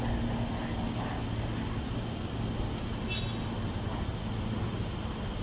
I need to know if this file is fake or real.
real